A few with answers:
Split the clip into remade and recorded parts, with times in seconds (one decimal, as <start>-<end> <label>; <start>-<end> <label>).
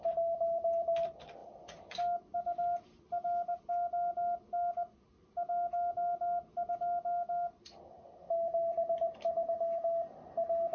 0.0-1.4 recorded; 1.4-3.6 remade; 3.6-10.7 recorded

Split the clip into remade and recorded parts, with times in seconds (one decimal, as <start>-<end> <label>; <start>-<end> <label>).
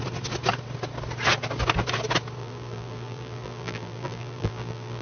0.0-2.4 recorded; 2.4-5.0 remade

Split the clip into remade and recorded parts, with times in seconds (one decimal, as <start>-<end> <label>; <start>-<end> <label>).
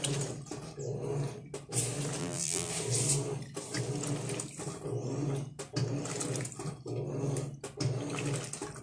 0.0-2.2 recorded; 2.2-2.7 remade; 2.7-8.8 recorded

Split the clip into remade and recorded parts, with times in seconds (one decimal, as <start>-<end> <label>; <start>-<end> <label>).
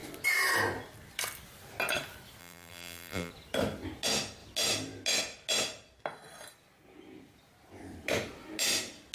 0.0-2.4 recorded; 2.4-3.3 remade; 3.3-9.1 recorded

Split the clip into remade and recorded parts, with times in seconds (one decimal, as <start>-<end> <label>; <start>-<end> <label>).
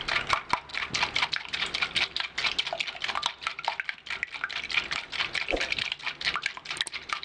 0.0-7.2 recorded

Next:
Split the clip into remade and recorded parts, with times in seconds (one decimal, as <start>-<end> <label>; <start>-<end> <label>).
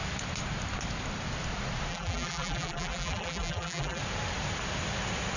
0.0-1.9 recorded; 1.9-4.0 remade; 4.0-5.4 recorded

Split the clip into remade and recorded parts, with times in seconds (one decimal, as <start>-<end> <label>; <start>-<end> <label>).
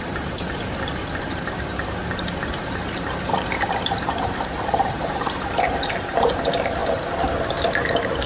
0.0-1.3 recorded; 1.3-6.3 remade; 6.3-6.8 recorded; 6.8-8.3 remade